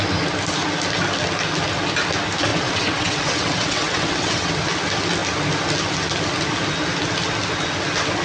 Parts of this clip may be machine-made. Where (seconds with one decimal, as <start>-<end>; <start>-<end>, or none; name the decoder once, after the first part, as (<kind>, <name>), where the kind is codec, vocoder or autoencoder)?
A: 2.5-4.5 (vocoder, WaveNeXt)